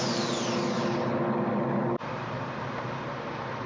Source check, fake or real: real